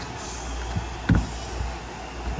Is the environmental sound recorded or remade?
recorded